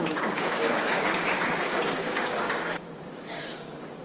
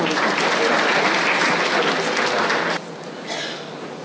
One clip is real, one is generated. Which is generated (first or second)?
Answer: first